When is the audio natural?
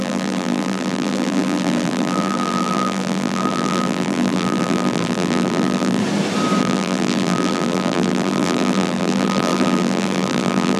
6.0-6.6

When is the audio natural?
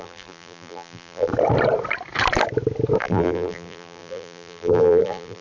1.3-3.0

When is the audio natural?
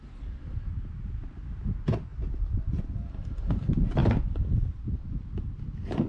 0.0-6.1